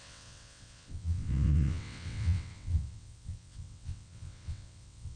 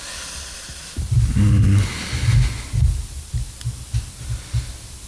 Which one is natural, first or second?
second